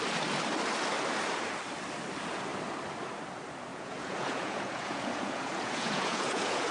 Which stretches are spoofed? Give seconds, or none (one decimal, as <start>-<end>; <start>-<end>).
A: 3.7-6.7